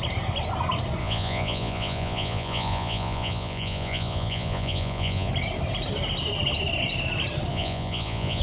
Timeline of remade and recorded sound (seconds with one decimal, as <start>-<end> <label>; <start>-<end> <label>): 0.0-1.0 recorded; 1.0-5.3 remade; 5.3-7.5 recorded; 7.5-8.4 remade